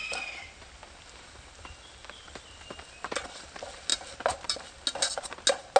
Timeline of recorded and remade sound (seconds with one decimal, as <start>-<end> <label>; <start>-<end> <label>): 0.0-5.8 recorded